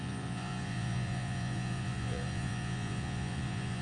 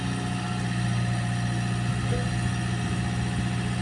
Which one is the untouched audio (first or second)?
second